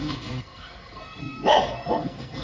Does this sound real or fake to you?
fake